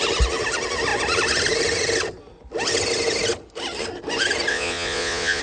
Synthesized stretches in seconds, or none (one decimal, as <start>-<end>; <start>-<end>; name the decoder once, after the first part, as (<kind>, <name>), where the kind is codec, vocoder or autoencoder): 4.5-5.4 (vocoder, Vocos)